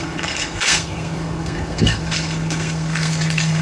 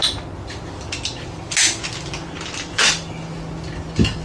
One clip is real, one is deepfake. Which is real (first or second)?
second